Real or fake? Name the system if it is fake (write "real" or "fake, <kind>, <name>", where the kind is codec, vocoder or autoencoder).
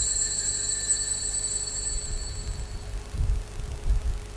real